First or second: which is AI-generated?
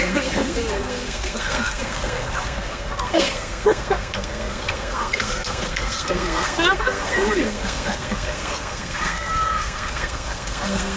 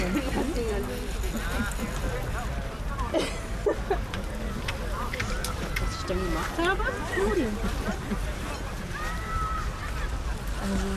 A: first